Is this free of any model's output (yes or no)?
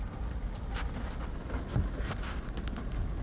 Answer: yes